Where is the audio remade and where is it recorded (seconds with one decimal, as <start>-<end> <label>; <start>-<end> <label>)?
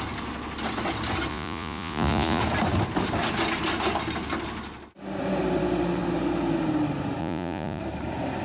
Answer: 0.0-1.3 recorded; 1.3-2.4 remade; 2.4-7.2 recorded; 7.2-7.8 remade; 7.8-8.4 recorded